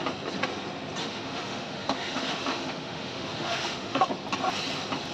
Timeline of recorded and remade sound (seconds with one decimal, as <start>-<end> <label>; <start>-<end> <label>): 0.0-1.0 recorded; 1.0-4.1 remade; 4.1-5.1 recorded